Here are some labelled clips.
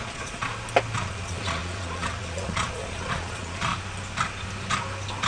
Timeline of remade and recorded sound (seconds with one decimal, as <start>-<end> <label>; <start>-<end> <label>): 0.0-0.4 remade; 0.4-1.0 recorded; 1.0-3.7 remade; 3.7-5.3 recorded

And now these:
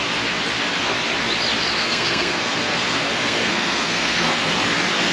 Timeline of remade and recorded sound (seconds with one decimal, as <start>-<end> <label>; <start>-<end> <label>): 0.0-1.8 recorded; 1.8-4.5 remade; 4.5-5.1 recorded

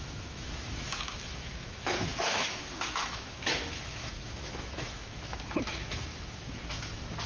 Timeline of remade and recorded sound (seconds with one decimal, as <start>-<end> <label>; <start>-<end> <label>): 0.0-7.3 remade

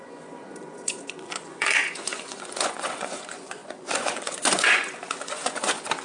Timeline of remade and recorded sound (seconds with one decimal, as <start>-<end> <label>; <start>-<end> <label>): 0.0-6.0 remade